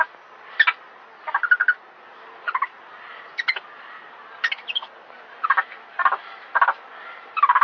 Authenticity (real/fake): real